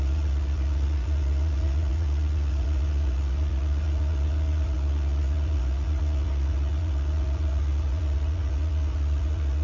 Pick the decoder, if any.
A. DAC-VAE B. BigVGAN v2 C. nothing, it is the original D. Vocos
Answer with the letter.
D